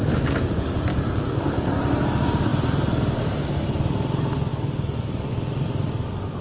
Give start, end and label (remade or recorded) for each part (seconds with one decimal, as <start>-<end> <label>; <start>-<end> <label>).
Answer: 0.0-0.9 recorded; 0.9-1.8 remade; 1.8-4.5 recorded; 4.5-5.3 remade; 5.3-6.4 recorded